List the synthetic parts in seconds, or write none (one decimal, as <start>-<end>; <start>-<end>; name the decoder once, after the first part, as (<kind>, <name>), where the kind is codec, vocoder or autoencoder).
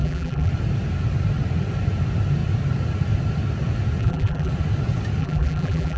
0.0-0.5 (vocoder, BigVGAN v2); 4.0-4.5; 5.2-6.0